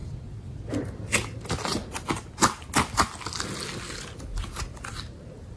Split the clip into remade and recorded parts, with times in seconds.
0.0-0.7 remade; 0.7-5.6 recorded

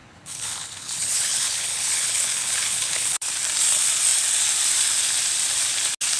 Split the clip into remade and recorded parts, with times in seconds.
0.0-3.3 remade; 3.3-6.2 recorded

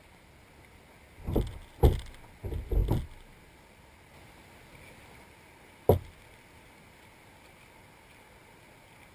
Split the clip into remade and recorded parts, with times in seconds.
0.0-9.1 recorded

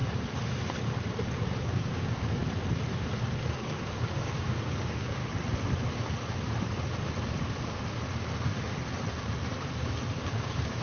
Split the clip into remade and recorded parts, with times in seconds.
0.0-1.6 recorded; 1.6-2.4 remade; 2.4-3.4 recorded; 3.4-5.2 remade; 5.2-10.2 recorded; 10.2-10.8 remade

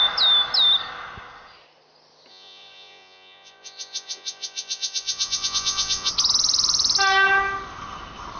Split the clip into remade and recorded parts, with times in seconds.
0.0-2.3 recorded; 2.3-6.1 remade; 6.1-8.4 recorded

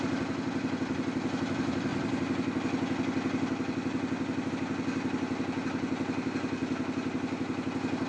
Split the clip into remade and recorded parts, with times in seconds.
0.0-8.1 recorded

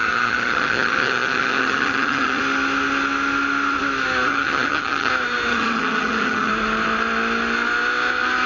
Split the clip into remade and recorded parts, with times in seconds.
0.0-2.4 remade; 2.4-4.3 recorded; 4.3-5.1 remade; 5.1-5.5 recorded; 5.5-6.5 remade; 6.5-8.5 recorded

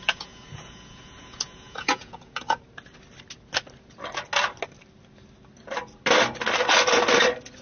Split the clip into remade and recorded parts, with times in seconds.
0.0-2.6 remade; 2.6-7.6 recorded